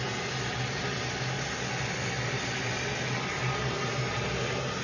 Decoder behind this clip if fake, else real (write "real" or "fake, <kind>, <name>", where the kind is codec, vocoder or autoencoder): real